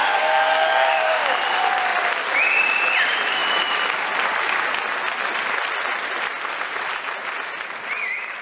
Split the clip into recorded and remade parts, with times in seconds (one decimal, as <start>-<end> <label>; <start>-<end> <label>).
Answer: 0.0-1.4 remade; 1.4-8.4 recorded